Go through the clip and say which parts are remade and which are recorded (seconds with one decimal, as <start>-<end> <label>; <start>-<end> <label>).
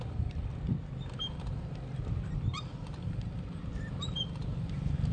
0.0-5.1 recorded